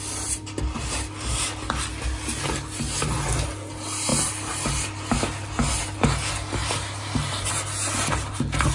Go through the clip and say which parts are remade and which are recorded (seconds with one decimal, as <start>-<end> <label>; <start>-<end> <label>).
0.0-6.6 recorded; 6.6-7.5 remade; 7.5-8.7 recorded